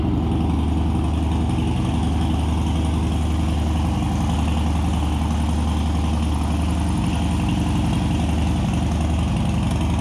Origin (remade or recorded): recorded